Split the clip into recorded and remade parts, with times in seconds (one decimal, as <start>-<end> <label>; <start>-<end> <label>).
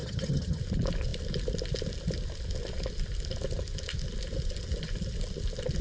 0.0-0.6 remade; 0.6-5.8 recorded